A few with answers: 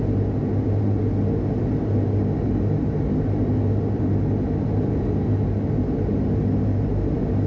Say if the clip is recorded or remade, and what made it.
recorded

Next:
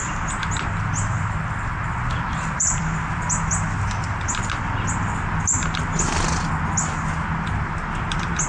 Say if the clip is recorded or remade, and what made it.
recorded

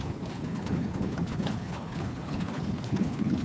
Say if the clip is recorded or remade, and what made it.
remade, codec, HILCodec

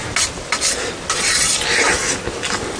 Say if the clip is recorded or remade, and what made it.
recorded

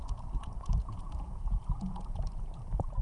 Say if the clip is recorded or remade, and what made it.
remade, vocoder, Vocos